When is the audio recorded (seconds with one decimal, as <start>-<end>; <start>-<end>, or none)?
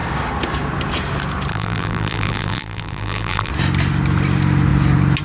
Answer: 0.0-1.5; 3.5-5.2